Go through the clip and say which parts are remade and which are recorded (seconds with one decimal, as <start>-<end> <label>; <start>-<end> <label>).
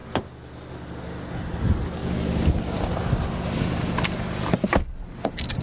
0.0-5.6 recorded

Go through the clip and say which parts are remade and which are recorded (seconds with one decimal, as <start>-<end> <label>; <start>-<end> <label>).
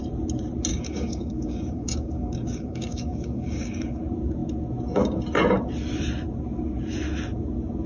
0.0-0.7 recorded; 0.7-4.0 remade; 4.0-7.9 recorded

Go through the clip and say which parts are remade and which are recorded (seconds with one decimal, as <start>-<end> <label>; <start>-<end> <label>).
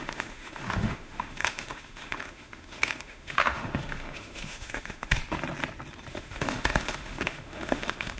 0.0-5.2 remade; 5.2-6.1 recorded; 6.1-8.2 remade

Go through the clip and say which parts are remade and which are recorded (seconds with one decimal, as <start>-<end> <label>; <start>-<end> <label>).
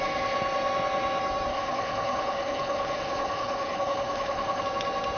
0.0-1.5 recorded; 1.5-4.6 remade; 4.6-5.2 recorded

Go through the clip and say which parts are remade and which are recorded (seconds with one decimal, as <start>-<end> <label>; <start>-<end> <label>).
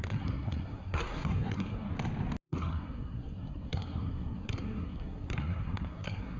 0.0-1.9 remade; 1.9-2.4 recorded; 2.4-6.4 remade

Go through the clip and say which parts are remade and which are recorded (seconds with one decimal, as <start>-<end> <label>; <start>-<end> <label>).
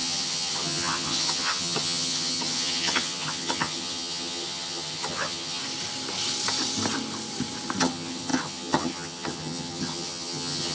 0.0-5.6 remade; 5.6-7.8 recorded; 7.8-10.7 remade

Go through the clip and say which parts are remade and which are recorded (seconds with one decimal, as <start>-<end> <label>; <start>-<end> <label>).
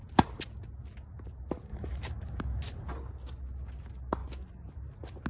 0.0-1.7 recorded; 1.7-2.9 remade; 2.9-5.3 recorded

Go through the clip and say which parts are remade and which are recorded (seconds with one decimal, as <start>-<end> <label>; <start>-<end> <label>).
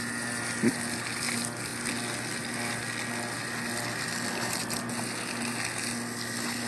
0.0-6.7 recorded